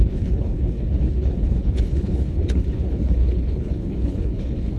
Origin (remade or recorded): remade